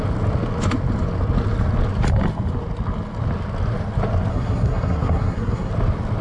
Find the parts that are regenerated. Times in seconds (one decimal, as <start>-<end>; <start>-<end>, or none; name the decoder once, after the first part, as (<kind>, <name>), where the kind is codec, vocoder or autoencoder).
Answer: 4.3-5.7 (codec, SNAC)